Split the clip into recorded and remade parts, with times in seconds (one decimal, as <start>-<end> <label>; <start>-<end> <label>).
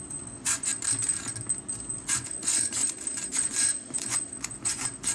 0.0-0.7 remade; 0.7-1.9 recorded; 1.9-2.8 remade; 2.8-3.3 recorded; 3.3-5.1 remade